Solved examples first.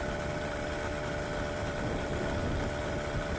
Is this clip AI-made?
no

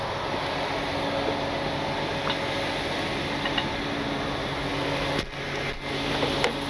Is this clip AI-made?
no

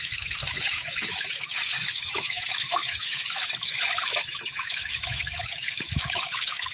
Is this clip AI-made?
yes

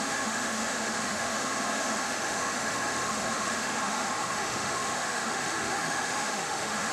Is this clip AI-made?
yes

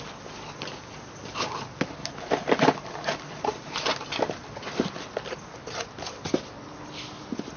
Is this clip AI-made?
no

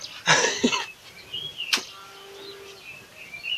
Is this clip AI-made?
no